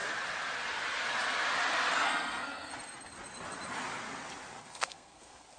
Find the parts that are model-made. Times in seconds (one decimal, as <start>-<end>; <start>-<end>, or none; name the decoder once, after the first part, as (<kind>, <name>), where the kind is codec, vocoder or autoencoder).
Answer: 1.9-2.7 (codec, SNAC); 4.6-5.6